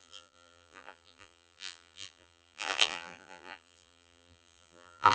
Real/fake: fake